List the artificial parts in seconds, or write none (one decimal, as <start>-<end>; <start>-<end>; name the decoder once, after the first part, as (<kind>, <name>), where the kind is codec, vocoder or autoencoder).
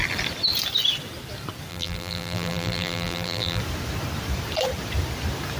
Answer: 1.7-3.6 (vocoder, BigVGAN v2)